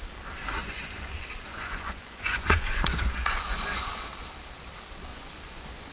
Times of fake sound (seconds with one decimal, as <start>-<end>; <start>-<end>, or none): 0.6-4.1; 5.1-5.9